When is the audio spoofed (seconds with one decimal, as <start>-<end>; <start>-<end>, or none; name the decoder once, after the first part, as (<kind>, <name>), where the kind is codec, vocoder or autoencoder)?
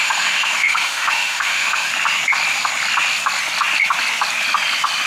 0.0-1.9 (autoencoder, DAC-VAE)